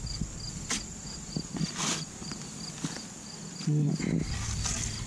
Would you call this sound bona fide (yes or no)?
yes